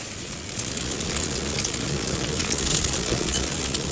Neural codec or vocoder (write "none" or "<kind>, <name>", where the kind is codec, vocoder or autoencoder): vocoder, Vocos